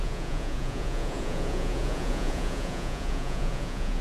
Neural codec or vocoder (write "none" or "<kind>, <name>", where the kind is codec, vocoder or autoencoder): vocoder, Vocos